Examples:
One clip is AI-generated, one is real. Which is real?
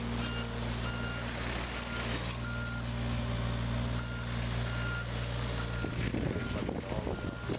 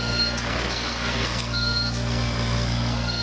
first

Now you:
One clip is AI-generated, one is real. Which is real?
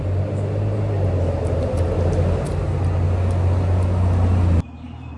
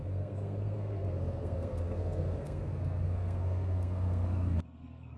first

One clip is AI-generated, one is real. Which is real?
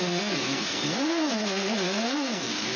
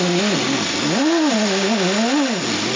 second